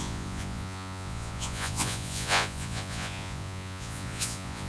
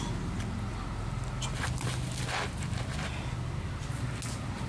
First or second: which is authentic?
second